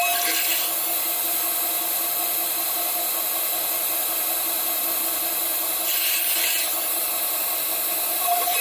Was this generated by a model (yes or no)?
no